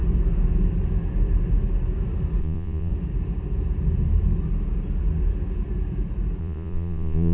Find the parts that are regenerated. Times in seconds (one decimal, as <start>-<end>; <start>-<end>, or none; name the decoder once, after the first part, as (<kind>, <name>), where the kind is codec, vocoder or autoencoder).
2.4-2.9 (vocoder, Vocos); 6.4-7.3